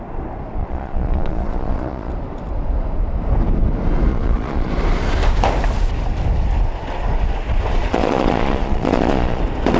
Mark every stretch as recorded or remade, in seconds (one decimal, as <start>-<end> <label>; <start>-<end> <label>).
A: 0.0-0.6 recorded; 0.6-2.1 remade; 2.1-4.1 recorded; 4.1-4.7 remade; 4.7-7.8 recorded; 7.8-9.4 remade; 9.4-9.8 recorded